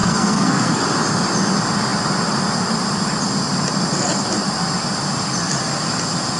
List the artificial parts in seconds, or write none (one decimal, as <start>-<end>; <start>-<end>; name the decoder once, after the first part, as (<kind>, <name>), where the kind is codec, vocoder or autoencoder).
0.0-0.8 (codec, SNAC)